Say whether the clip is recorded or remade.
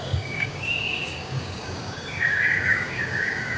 remade